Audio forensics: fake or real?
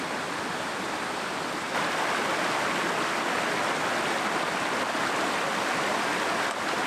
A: real